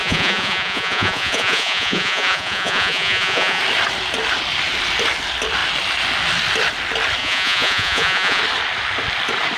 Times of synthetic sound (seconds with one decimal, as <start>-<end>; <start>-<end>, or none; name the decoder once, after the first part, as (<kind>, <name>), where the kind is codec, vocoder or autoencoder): 0.0-3.6 (vocoder, Vocos); 7.2-8.4